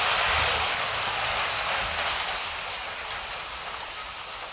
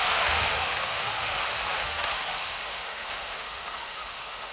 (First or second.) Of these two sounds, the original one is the first